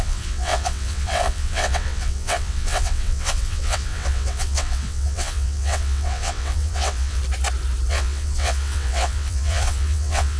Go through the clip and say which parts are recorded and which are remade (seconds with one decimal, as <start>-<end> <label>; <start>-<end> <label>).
0.0-7.2 remade; 7.2-7.9 recorded; 7.9-10.4 remade